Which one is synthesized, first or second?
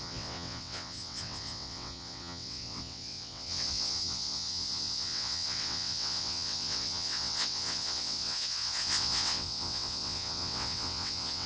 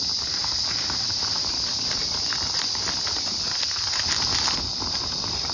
first